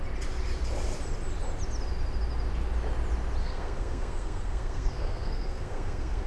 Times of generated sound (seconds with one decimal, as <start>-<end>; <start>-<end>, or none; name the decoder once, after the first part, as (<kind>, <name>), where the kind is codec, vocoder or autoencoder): 3.4-6.3 (codec, SNAC)